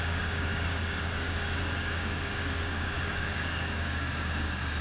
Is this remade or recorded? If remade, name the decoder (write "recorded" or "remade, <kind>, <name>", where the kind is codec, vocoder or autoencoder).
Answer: remade, codec, DAC